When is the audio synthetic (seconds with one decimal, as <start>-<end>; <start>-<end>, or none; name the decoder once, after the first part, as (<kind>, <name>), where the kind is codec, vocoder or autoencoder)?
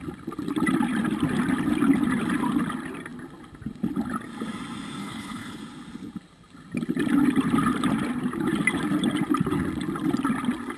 5.0-5.6 (codec, HILCodec)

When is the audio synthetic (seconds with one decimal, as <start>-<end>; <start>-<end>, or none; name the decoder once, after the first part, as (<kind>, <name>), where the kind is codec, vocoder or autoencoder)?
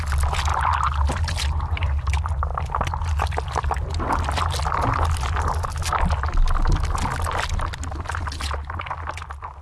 none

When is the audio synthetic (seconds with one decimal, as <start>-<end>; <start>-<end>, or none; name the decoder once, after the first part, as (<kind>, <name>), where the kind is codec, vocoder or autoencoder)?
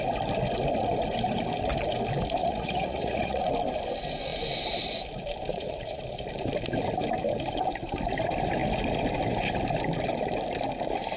2.4-3.5 (vocoder, Vocos); 5.5-6.0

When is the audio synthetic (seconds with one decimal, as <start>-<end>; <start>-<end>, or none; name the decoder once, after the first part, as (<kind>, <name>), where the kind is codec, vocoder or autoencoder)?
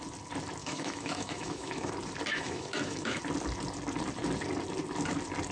0.6-1.9 (autoencoder, DAC-VAE); 2.3-3.2